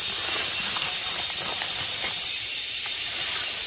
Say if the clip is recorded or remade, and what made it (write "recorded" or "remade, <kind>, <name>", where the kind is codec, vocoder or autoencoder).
recorded